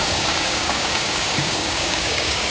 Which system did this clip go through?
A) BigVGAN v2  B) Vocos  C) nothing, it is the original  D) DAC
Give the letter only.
D